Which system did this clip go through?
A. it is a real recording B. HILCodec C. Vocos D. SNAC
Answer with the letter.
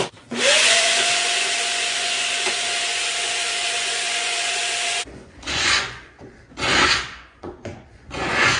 C